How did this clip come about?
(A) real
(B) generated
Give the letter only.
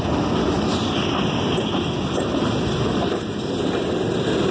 A